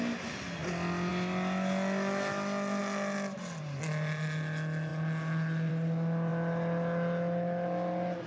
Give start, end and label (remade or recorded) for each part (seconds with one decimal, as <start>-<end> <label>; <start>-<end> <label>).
0.0-8.3 recorded